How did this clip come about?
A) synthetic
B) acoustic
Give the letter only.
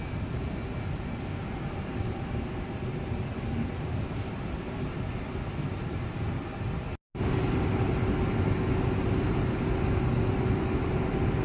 B